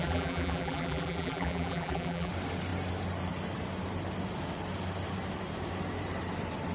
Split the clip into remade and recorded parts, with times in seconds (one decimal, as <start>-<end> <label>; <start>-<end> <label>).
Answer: 0.0-2.3 remade; 2.3-6.7 recorded